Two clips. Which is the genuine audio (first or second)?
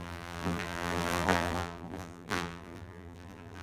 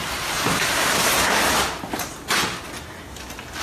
second